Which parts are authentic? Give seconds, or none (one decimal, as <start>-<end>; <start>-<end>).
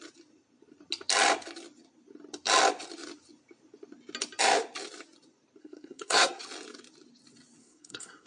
0.0-5.6; 6.4-7.6